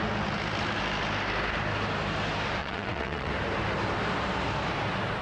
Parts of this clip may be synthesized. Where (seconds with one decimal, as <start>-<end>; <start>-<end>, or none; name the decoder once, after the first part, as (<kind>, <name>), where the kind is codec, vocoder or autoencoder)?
2.6-3.3 (vocoder, WaveNeXt)